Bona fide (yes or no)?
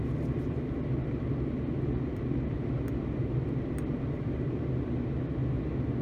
yes